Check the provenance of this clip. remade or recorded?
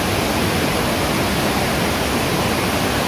recorded